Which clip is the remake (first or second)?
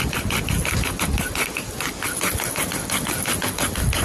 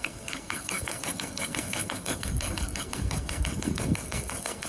second